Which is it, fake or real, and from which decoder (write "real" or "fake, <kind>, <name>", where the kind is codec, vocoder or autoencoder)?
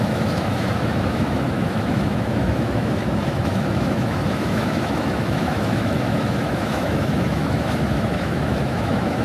fake, autoencoder, DAC-VAE